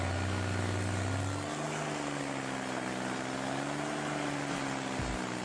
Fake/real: real